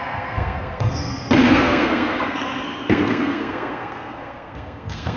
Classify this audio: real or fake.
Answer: fake